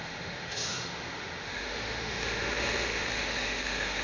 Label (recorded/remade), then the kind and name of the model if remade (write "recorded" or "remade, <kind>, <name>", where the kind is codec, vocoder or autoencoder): remade, autoencoder, DAC-VAE